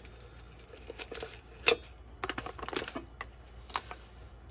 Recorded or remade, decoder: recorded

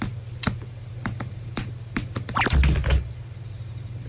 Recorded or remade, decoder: recorded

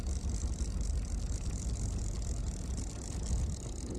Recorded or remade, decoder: recorded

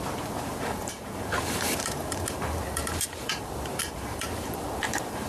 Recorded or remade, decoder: remade, vocoder, BigVGAN v2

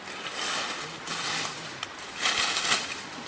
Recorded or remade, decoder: recorded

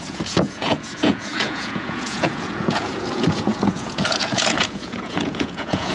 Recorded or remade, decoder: remade, vocoder, Vocos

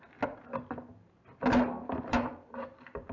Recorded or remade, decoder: recorded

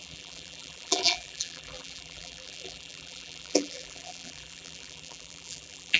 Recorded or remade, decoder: remade, vocoder, BigVGAN v2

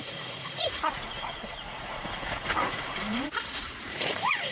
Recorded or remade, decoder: remade, vocoder, Vocos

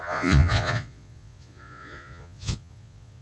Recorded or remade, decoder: remade, vocoder, Vocos